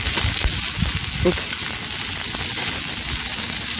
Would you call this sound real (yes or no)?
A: yes